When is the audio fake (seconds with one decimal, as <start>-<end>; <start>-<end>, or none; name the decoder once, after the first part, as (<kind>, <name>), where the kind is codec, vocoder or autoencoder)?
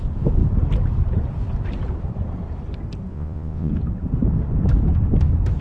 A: 3.1-3.7 (vocoder, Vocos)